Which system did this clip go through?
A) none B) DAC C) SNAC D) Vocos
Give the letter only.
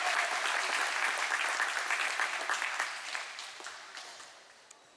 A